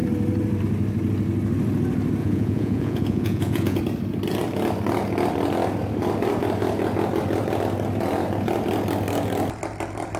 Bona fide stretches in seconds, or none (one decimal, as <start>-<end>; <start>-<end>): 0.0-2.2; 3.8-10.2